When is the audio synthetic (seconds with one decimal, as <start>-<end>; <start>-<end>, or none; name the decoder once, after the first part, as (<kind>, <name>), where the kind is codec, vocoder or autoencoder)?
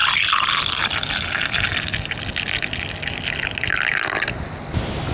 none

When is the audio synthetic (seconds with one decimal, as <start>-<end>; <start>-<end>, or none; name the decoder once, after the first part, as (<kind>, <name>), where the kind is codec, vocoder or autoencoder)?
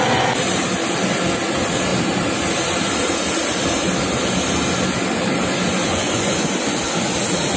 5.8-6.8 (vocoder, Vocos)